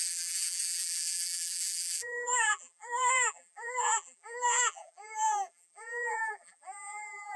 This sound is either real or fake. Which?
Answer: fake